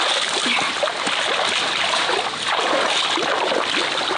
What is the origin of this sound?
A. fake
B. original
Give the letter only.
B